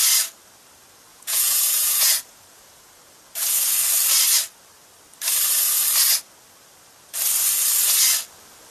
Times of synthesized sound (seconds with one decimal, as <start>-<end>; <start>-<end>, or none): 1.1-2.9